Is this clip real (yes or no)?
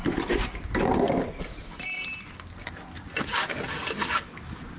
yes